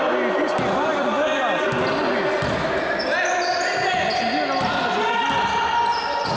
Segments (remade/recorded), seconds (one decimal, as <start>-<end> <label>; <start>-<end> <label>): 0.0-6.4 recorded